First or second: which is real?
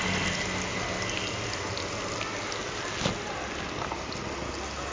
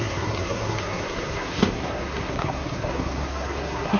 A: first